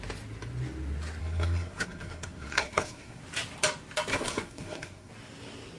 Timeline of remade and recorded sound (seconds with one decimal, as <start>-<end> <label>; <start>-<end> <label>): 0.0-1.2 recorded; 1.2-3.2 remade; 3.2-4.1 recorded; 4.1-5.1 remade; 5.1-5.8 recorded